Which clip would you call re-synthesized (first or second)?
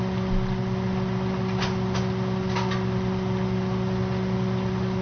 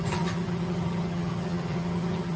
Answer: second